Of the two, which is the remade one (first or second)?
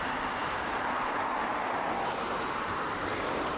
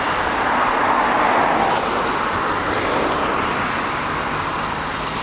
first